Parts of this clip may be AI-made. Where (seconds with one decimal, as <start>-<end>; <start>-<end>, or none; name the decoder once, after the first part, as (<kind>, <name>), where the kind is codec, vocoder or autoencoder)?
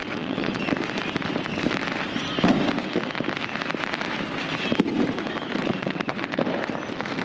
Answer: 0.0-0.6 (vocoder, WaveNeXt); 5.6-6.4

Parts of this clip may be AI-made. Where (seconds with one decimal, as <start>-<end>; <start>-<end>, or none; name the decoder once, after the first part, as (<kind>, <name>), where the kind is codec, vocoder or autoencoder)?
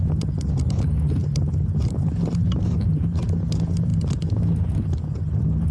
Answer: none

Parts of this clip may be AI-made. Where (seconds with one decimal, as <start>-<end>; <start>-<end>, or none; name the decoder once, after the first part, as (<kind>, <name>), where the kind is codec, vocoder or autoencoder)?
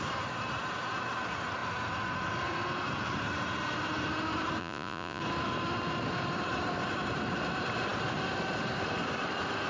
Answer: 4.6-5.2 (vocoder, Vocos)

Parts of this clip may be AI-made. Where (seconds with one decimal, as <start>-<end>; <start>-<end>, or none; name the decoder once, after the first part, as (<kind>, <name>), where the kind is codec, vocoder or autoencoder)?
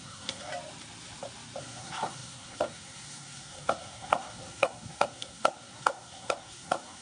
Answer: 0.0-0.5 (codec, SNAC); 1.6-7.0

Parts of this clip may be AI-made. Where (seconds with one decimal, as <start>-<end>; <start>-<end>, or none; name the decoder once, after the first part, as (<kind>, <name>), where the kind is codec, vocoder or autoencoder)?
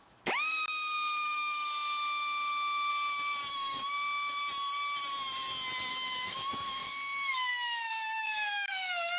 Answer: 0.0-2.9 (autoencoder, DAC-VAE); 3.5-4.4; 5.9-9.2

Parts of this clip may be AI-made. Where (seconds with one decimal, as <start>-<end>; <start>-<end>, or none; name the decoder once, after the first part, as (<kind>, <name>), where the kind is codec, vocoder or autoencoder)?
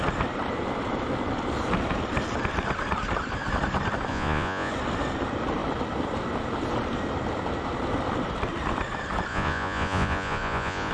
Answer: 4.1-4.7 (vocoder, Vocos); 9.3-10.9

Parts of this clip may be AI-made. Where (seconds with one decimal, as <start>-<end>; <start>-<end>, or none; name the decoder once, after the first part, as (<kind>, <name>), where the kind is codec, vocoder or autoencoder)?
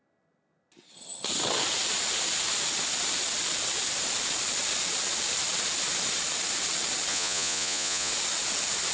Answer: 7.1-8.1 (vocoder, Vocos)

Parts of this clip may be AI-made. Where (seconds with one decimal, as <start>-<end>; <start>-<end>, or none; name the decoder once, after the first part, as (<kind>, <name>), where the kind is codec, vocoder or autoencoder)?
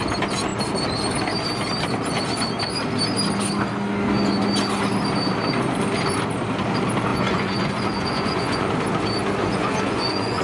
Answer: 7.1-8.7 (vocoder, Vocos); 9.4-10.4